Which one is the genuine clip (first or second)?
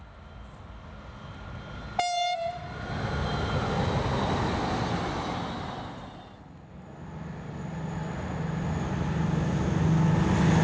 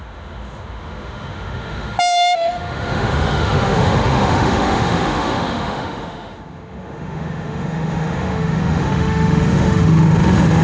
first